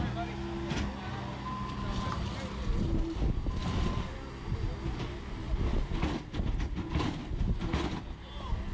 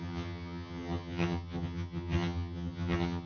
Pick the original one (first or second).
first